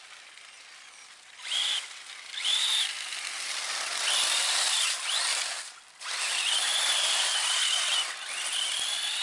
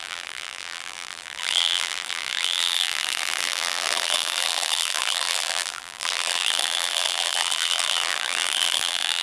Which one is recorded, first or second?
first